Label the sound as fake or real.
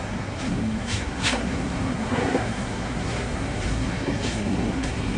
fake